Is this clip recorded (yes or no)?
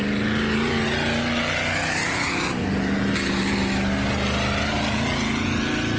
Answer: yes